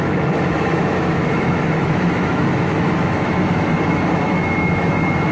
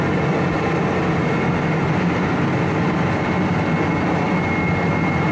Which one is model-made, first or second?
first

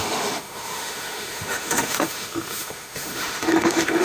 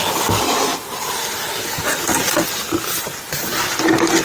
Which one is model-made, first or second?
first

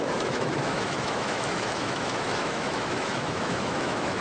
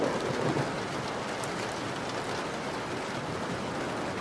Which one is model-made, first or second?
first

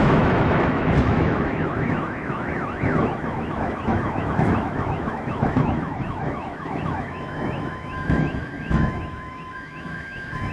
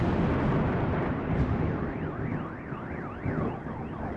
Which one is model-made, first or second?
first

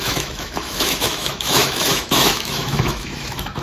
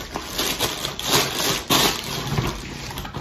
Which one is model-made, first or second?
first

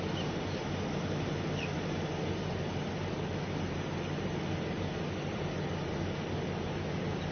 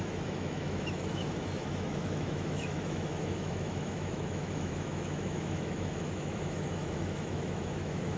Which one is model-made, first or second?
second